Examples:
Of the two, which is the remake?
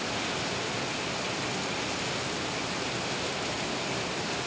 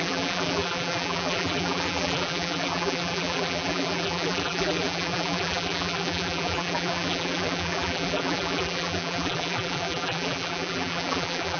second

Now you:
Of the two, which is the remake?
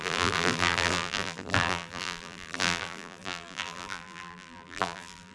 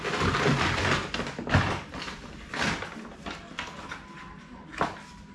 first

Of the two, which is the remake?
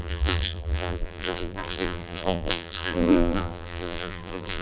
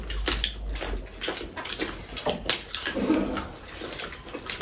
first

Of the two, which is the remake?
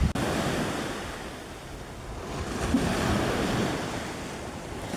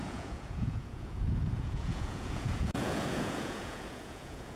second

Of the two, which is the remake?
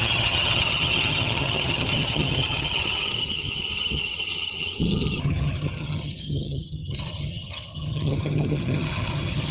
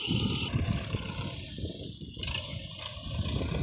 first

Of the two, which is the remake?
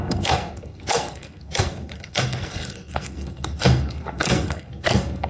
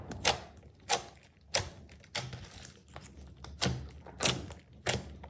first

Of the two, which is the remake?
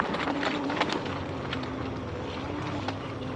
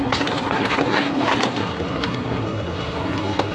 second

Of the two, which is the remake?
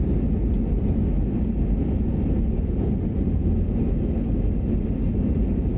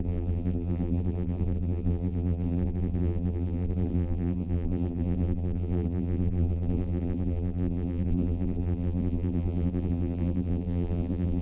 second